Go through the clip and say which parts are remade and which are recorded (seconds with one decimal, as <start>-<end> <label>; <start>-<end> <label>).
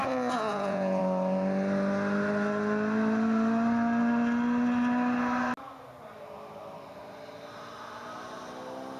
0.0-0.5 recorded; 0.5-1.0 remade; 1.0-9.0 recorded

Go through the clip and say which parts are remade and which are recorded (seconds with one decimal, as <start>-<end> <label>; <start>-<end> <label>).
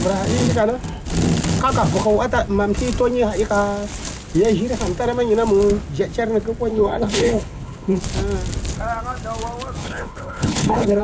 0.0-6.7 recorded; 6.7-8.0 remade; 8.0-9.8 recorded; 9.8-11.0 remade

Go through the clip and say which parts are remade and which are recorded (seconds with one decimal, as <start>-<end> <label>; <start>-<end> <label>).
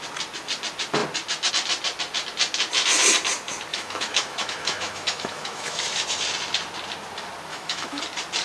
0.0-3.7 recorded; 3.7-5.8 remade; 5.8-7.5 recorded; 7.5-8.0 remade; 8.0-8.4 recorded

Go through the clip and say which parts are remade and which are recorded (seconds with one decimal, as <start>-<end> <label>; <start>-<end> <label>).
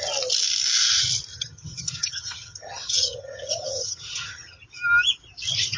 0.0-1.3 recorded; 1.3-4.6 remade; 4.6-5.8 recorded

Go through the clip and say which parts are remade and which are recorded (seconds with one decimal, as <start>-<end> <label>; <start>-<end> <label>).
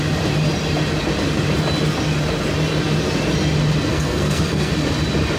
0.0-3.9 recorded; 3.9-4.7 remade; 4.7-5.4 recorded